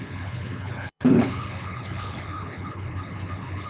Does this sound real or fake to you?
fake